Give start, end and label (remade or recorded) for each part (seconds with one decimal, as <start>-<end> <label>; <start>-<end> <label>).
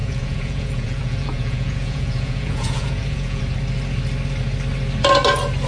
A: 0.0-3.4 remade; 3.4-5.7 recorded